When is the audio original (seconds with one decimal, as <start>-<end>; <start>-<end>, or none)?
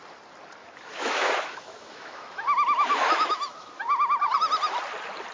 0.0-0.6; 3.8-5.3